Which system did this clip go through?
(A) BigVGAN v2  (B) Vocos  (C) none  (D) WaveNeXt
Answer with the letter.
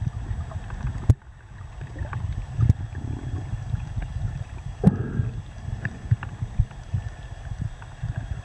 C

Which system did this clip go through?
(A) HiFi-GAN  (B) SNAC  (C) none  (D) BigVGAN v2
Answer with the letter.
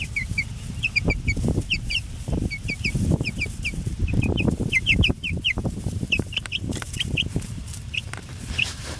D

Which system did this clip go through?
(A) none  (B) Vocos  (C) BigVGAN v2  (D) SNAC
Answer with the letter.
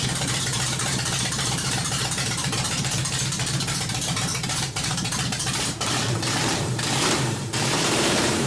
C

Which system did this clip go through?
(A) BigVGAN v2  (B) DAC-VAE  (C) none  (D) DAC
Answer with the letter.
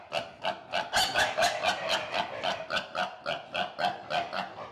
C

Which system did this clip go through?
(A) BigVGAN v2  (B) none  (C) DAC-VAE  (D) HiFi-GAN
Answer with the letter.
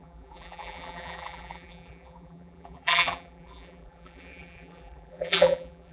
A